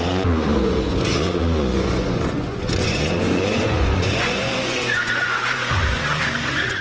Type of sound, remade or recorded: remade